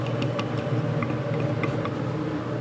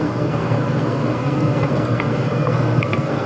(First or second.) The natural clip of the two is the first